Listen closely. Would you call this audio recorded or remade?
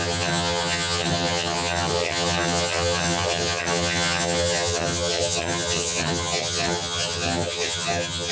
remade